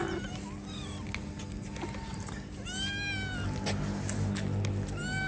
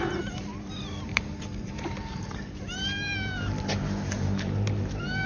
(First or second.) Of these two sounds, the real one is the first